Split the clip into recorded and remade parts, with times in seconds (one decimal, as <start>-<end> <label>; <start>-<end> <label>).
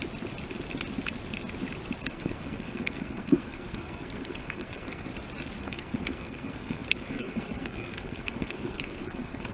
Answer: 0.0-2.1 recorded; 2.1-5.1 remade; 5.1-5.6 recorded; 5.6-9.5 remade